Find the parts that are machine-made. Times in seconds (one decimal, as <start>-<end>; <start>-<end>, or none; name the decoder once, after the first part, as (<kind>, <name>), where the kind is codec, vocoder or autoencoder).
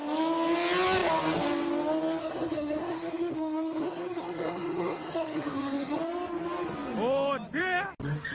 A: 2.2-6.0 (codec, SNAC)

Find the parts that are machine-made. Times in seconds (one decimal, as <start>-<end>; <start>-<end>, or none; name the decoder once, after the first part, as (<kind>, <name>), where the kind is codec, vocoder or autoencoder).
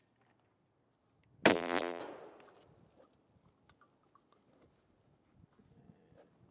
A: 1.5-2.0 (vocoder, BigVGAN v2)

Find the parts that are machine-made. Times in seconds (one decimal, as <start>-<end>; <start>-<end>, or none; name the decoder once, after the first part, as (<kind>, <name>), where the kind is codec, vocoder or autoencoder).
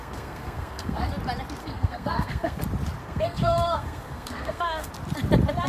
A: 0.0-1.1 (codec, SNAC); 1.6-2.6; 3.0-4.9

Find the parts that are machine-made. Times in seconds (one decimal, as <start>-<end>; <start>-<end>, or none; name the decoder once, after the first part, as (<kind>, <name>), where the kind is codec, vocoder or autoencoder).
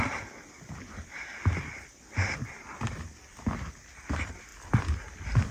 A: none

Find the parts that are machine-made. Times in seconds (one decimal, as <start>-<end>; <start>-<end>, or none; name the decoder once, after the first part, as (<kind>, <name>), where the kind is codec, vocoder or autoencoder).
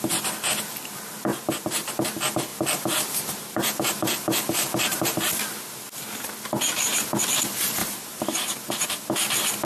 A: 1.3-1.9 (vocoder, BigVGAN v2); 2.5-5.2; 7.8-8.7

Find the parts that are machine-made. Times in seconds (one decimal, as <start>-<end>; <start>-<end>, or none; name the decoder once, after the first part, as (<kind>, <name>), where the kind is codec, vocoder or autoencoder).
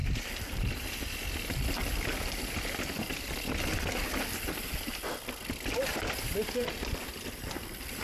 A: none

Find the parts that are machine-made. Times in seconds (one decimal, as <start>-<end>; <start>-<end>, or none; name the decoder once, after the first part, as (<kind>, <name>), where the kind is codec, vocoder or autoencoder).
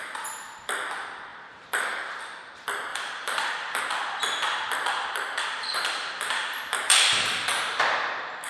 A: 1.3-2.2 (vocoder, BigVGAN v2); 2.9-3.8; 5.7-7.8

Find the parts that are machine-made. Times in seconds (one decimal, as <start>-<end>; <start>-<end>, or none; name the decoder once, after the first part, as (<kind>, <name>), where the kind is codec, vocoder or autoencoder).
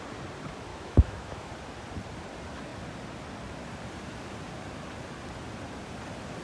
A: 0.7-1.5 (autoencoder, DAC-VAE)